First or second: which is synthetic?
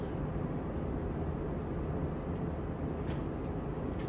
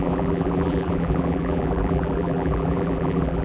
second